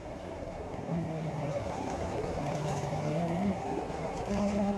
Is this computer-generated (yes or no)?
yes